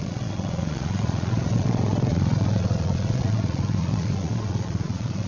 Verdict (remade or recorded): remade